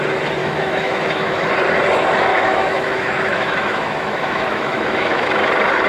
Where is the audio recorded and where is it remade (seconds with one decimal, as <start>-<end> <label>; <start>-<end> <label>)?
0.0-0.4 recorded; 0.4-1.5 remade; 1.5-2.3 recorded; 2.3-5.5 remade; 5.5-5.9 recorded